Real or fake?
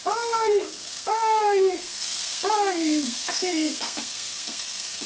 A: fake